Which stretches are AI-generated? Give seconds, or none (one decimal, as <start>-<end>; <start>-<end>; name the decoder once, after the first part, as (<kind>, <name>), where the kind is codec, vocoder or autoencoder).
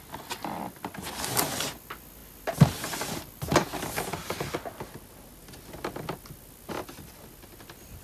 none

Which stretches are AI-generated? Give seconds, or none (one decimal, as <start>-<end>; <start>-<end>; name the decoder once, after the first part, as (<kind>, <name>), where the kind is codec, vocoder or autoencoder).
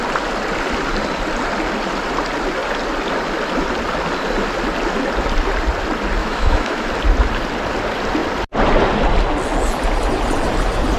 6.2-6.9 (autoencoder, DAC-VAE)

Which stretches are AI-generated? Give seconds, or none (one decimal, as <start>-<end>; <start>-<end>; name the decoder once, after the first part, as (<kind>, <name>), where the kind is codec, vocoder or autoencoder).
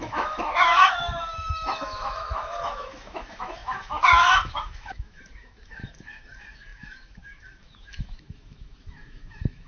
0.0-9.7 (autoencoder, DAC-VAE)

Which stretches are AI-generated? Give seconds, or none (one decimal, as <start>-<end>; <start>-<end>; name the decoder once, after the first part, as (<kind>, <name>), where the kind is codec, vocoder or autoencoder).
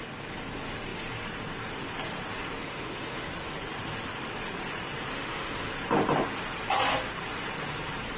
2.6-3.3 (autoencoder, DAC-VAE); 5.1-5.7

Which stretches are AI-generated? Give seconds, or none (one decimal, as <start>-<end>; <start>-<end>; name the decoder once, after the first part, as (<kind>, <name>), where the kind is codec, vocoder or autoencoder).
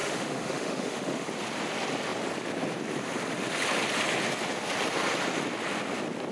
0.0-1.3 (autoencoder, DAC-VAE)